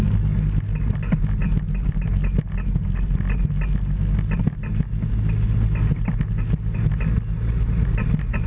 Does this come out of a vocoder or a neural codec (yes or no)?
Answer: no